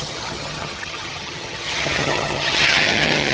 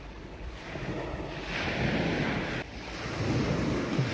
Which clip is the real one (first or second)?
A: second